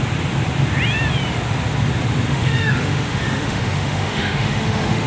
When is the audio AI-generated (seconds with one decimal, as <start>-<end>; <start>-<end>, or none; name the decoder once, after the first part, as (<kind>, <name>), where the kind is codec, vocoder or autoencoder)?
2.3-5.1 (autoencoder, DAC-VAE)